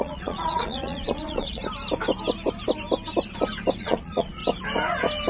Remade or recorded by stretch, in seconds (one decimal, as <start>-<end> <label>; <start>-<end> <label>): 0.0-1.6 remade; 1.6-3.8 recorded; 3.8-4.4 remade; 4.4-5.3 recorded